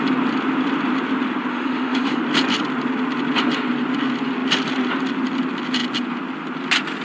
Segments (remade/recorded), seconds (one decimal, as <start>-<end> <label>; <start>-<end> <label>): 0.0-1.5 recorded; 1.5-2.2 remade; 2.2-7.0 recorded